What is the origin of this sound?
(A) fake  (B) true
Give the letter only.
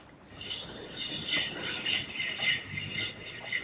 B